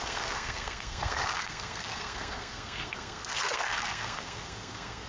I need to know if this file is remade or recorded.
remade